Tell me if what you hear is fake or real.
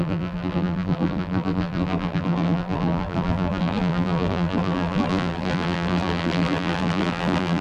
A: fake